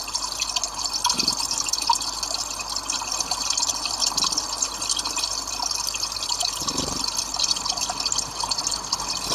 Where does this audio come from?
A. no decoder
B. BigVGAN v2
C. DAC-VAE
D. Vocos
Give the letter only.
A